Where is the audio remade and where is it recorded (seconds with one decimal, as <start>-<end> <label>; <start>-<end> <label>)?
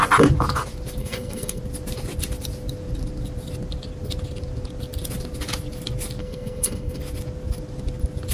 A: 0.0-1.0 recorded; 1.0-1.6 remade; 1.6-6.2 recorded; 6.2-7.0 remade; 7.0-8.3 recorded